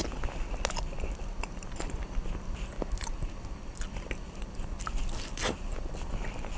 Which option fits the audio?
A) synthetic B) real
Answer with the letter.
B